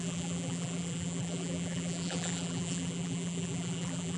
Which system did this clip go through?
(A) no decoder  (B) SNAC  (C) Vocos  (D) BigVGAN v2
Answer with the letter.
D